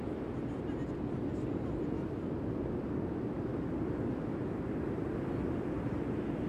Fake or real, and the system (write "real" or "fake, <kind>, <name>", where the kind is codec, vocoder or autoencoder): real